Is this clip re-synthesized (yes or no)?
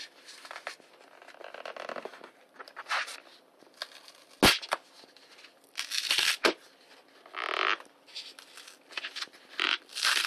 no